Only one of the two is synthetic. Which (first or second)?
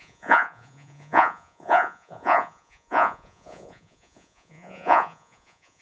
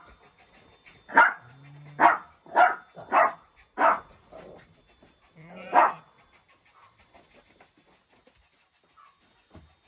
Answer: first